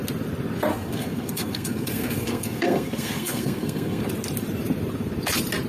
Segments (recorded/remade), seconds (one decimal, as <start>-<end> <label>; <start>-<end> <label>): 0.0-0.7 recorded; 0.7-4.0 remade; 4.0-5.7 recorded